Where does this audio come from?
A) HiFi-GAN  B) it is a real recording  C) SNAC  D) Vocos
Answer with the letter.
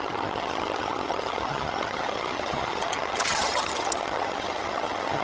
A